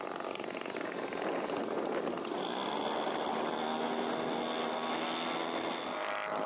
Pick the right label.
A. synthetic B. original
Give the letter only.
B